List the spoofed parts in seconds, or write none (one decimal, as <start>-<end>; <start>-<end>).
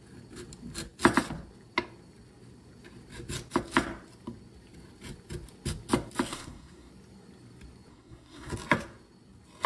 6.3-6.9; 7.9-8.5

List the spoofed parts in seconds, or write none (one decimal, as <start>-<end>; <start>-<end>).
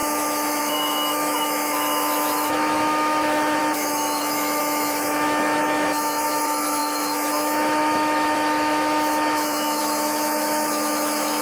0.0-11.4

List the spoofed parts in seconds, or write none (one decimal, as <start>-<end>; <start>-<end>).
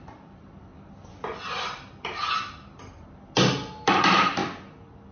0.0-0.7; 3.7-4.4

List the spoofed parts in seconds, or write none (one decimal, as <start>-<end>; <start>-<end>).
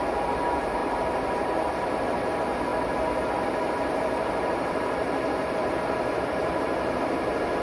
0.8-1.8; 5.6-7.0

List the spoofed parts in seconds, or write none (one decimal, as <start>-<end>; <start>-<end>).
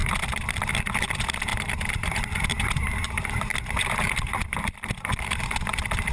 0.0-0.7; 1.5-5.2